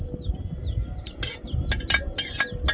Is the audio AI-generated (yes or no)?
no